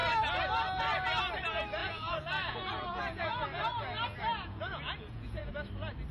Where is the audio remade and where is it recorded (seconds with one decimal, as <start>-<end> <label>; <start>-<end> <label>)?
0.0-1.8 recorded; 1.8-5.5 remade; 5.5-6.1 recorded